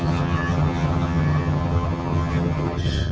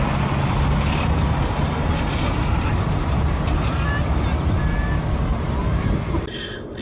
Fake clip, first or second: first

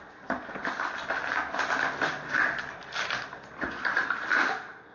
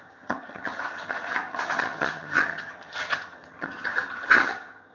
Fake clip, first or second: second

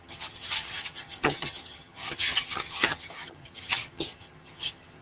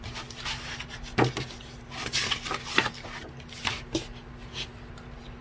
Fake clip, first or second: first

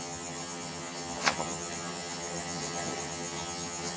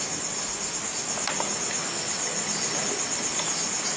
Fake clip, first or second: first